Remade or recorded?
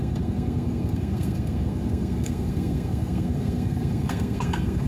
remade